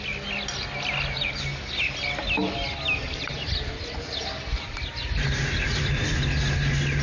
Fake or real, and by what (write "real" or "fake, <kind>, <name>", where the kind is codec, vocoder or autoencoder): real